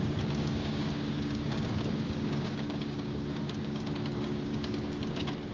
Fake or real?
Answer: fake